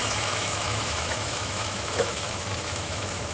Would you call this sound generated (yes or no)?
yes